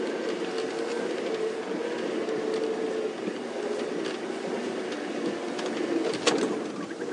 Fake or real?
real